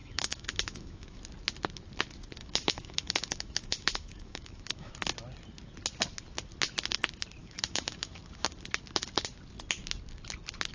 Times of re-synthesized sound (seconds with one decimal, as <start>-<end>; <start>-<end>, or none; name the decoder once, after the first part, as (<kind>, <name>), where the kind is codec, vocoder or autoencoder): 0.0-1.2 (autoencoder, DAC-VAE); 2.4-4.9; 7.4-8.2